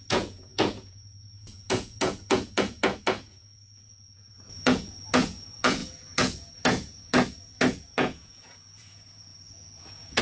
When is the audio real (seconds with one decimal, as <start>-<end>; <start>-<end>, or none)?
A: none

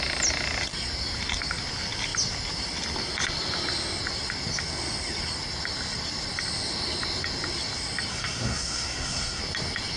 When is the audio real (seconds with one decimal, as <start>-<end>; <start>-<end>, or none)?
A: 0.0-8.1; 9.4-10.0